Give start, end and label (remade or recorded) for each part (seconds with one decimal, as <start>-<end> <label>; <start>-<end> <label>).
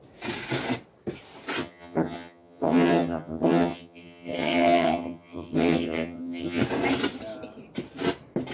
0.0-1.6 recorded; 1.6-6.6 remade; 6.6-8.5 recorded